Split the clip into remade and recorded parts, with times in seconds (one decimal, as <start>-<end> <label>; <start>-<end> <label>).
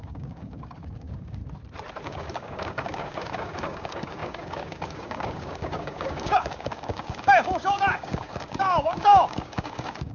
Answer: 0.0-1.4 remade; 1.4-2.0 recorded; 2.0-10.1 remade